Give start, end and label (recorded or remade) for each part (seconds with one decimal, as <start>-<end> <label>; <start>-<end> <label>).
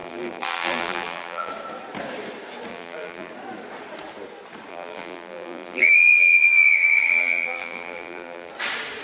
0.0-1.5 remade; 1.5-2.7 recorded; 2.7-3.3 remade; 3.3-4.7 recorded; 4.7-8.5 remade; 8.5-9.0 recorded